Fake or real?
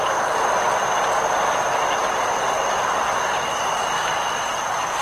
real